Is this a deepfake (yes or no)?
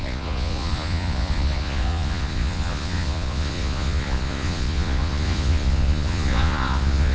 yes